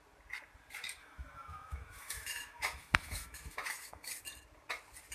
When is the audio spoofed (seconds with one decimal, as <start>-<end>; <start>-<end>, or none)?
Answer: 1.0-4.1